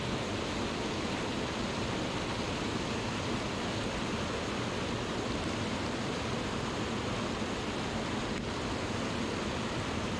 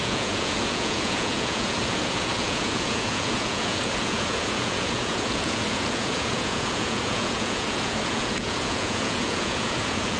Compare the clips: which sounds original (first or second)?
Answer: first